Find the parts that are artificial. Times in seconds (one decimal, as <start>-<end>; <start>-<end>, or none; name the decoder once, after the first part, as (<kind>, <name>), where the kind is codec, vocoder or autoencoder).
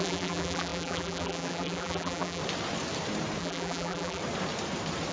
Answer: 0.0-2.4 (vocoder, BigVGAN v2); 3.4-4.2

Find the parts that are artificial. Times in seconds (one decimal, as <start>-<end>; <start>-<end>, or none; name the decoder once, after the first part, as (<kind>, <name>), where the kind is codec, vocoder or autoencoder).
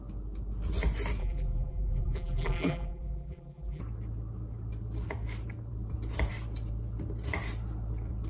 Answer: 1.2-3.8 (vocoder, BigVGAN v2)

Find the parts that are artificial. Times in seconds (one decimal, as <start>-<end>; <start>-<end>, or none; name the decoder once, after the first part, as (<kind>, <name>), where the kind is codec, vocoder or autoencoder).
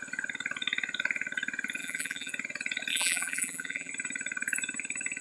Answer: 1.8-2.3 (vocoder, BigVGAN v2); 2.9-3.9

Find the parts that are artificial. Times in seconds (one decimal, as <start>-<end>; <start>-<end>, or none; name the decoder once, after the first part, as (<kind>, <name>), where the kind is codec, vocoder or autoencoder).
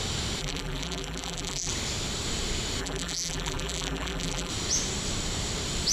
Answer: 0.4-1.7 (vocoder, BigVGAN v2); 2.8-4.5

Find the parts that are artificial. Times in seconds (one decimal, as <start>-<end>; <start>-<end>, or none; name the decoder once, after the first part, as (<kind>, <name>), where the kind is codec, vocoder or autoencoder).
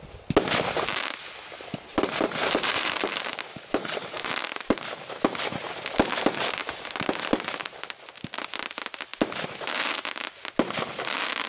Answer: 1.9-4.3 (vocoder, BigVGAN v2); 6.6-7.1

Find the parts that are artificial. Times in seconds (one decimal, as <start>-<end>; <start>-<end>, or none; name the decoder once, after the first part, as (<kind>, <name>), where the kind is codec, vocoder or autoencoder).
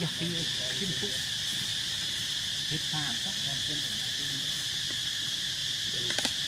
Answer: 0.0-1.7 (vocoder, BigVGAN v2); 2.2-3.5; 4.8-5.6; 6.1-6.5